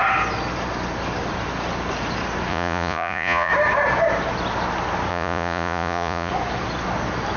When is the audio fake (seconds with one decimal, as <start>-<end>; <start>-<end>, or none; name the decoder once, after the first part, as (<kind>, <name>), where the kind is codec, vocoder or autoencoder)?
2.5-3.5 (vocoder, Vocos); 5.1-6.3